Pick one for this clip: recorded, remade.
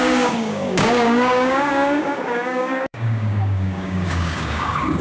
remade